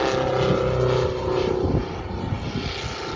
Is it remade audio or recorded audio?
recorded